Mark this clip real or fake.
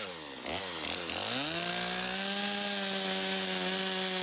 real